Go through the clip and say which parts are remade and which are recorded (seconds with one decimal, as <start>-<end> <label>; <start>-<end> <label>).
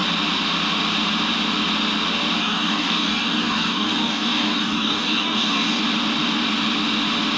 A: 0.0-2.4 recorded; 2.4-5.8 remade; 5.8-7.4 recorded